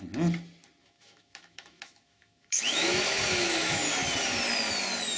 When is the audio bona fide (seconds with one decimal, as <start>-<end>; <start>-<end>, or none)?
0.0-0.8; 3.9-5.2